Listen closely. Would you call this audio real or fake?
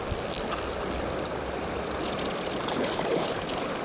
fake